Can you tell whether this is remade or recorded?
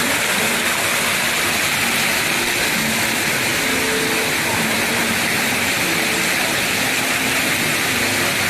recorded